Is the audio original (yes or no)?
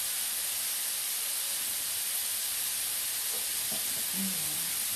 no